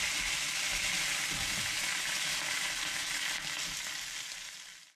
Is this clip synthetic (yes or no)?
no